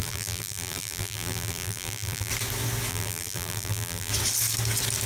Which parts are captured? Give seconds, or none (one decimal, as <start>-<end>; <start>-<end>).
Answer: 2.3-2.9; 4.1-5.1